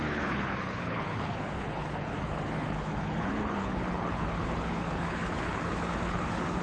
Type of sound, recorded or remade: remade